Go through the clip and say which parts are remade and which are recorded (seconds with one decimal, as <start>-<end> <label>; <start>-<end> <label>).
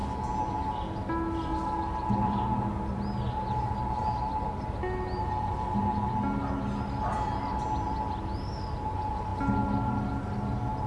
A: 0.0-10.9 recorded